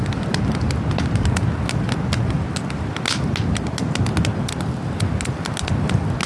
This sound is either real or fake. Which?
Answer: real